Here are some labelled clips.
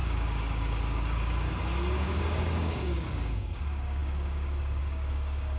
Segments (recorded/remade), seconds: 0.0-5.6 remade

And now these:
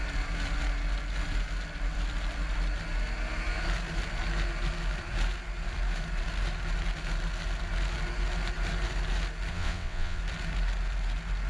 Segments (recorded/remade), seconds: 0.0-9.5 recorded; 9.5-10.2 remade; 10.2-11.5 recorded

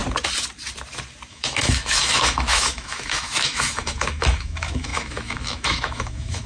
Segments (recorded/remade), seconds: 0.0-1.3 recorded; 1.3-6.5 remade

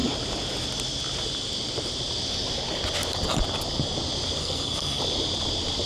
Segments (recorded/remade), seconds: 0.0-4.4 recorded; 4.4-5.0 remade; 5.0-5.9 recorded

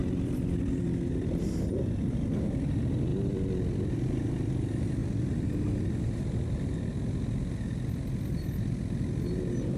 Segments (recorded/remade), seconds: 0.0-0.8 remade; 0.8-3.1 recorded; 3.1-3.8 remade; 3.8-5.0 recorded; 5.0-5.8 remade; 5.8-9.8 recorded